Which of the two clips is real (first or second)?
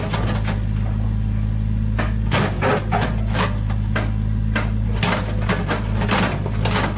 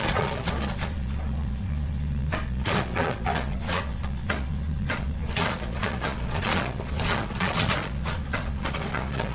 first